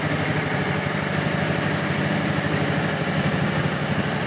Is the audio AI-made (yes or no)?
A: yes